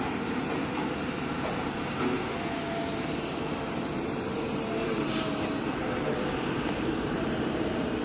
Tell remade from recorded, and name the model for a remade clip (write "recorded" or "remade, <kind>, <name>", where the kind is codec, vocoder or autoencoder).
remade, vocoder, BigVGAN v2